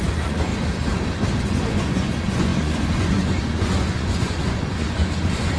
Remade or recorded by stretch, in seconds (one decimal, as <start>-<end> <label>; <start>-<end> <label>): 0.0-0.5 remade; 0.5-1.4 recorded; 1.4-5.6 remade